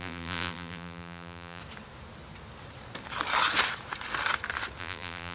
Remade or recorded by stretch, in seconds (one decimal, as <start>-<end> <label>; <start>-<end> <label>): 0.0-1.6 remade; 1.6-4.8 recorded; 4.8-5.3 remade